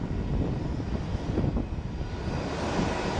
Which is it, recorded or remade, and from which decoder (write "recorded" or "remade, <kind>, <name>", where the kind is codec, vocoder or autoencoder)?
recorded